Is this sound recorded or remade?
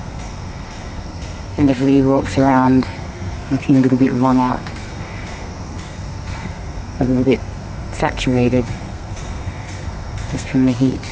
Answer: remade